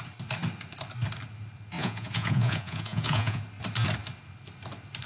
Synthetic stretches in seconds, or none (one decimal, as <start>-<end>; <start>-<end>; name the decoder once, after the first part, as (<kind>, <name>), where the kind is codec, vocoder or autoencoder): 1.8-3.4 (vocoder, Vocos)